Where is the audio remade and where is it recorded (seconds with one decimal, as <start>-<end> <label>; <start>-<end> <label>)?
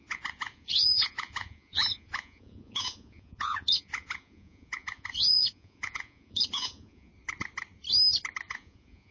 0.0-7.1 remade; 7.1-8.5 recorded; 8.5-9.1 remade